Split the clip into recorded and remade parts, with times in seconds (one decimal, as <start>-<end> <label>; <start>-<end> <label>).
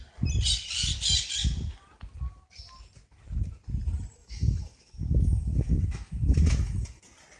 0.0-4.2 recorded; 4.2-7.0 remade; 7.0-7.4 recorded